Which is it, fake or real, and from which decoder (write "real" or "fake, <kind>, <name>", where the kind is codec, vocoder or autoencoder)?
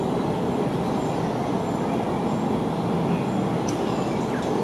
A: real